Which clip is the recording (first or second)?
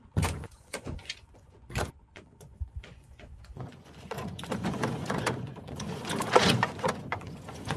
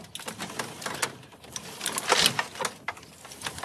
second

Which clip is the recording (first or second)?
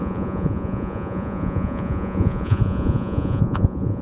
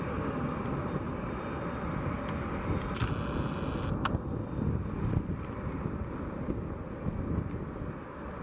second